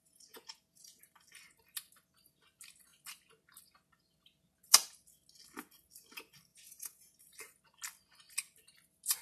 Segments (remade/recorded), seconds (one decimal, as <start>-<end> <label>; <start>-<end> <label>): 0.0-1.0 remade; 1.0-6.5 recorded; 6.5-7.2 remade; 7.2-9.2 recorded